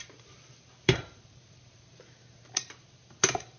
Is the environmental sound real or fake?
fake